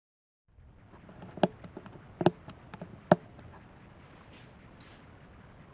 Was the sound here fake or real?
real